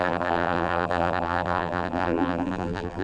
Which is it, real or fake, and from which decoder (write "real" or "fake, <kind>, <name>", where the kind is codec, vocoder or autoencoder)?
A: fake, vocoder, BigVGAN v2